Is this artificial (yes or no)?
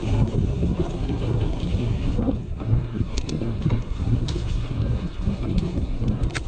yes